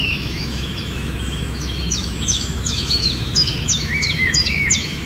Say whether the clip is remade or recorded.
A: remade